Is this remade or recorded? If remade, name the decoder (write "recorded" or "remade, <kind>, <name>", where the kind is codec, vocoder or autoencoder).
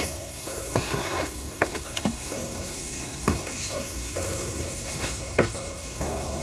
remade, codec, SNAC